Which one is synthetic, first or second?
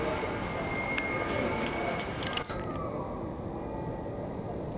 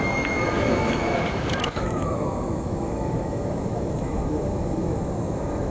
second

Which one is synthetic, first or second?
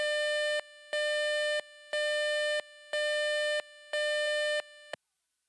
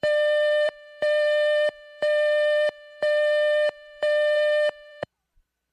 second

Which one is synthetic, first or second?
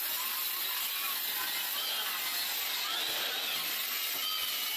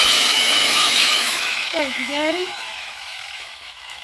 second